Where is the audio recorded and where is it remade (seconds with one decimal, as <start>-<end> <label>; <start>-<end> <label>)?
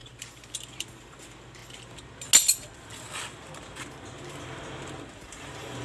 0.0-1.6 remade; 1.6-5.1 recorded; 5.1-5.8 remade